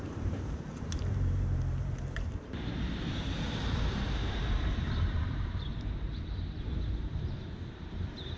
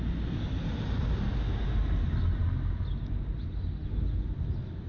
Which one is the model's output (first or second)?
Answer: first